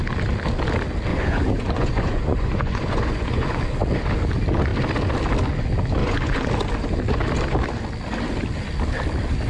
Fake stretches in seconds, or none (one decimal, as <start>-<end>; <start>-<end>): 1.1-3.6; 6.0-6.5